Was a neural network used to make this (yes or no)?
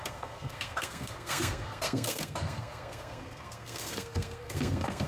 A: yes